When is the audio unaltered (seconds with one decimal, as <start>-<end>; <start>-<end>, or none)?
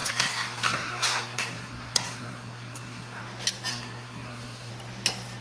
3.2-3.7; 4.7-5.4